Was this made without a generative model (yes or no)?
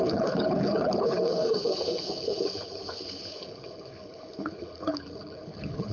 no